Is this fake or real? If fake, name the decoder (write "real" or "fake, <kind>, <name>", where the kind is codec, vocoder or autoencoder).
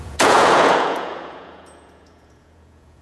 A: fake, vocoder, Vocos